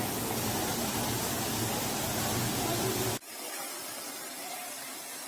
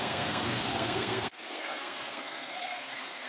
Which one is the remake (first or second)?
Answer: second